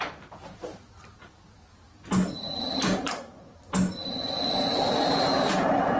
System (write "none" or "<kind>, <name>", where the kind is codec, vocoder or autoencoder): none